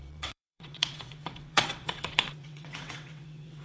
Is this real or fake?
fake